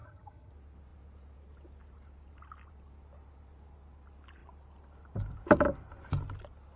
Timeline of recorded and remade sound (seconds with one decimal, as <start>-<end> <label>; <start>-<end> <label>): 0.0-0.5 remade; 0.5-6.8 recorded